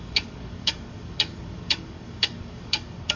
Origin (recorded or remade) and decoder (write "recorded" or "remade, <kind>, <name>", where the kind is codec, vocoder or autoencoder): remade, codec, DAC